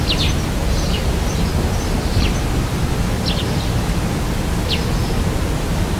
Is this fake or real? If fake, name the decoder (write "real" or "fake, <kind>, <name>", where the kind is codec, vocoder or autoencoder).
real